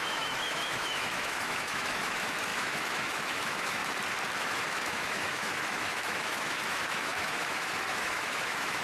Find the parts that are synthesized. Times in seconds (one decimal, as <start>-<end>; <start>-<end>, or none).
0.0-3.8; 4.4-8.8